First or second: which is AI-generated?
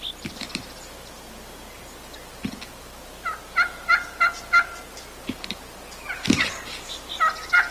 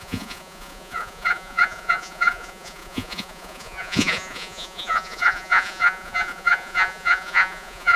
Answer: second